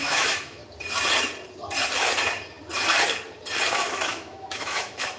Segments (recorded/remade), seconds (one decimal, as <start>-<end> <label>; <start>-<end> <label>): 0.0-0.6 remade; 0.6-3.7 recorded; 3.7-5.2 remade